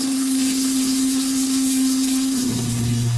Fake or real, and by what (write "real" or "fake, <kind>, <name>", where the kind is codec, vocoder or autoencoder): fake, codec, SNAC